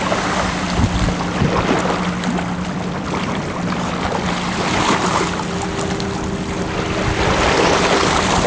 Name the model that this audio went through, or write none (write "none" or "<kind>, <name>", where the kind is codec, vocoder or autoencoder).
none